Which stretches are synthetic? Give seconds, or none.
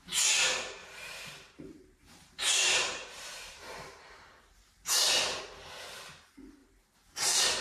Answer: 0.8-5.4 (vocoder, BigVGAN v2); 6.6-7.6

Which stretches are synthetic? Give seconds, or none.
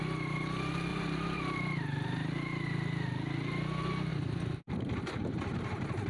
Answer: 0.9-1.6 (vocoder, BigVGAN v2); 4.1-6.1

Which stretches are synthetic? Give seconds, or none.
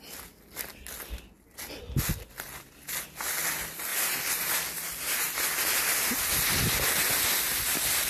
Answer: 3.9-4.5 (vocoder, BigVGAN v2)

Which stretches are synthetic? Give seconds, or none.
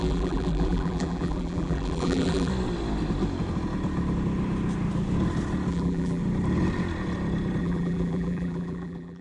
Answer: 0.0-2.5 (vocoder, BigVGAN v2); 5.7-6.2; 7.6-9.2